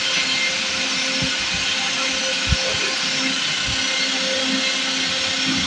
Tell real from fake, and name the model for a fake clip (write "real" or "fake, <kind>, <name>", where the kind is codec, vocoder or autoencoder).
real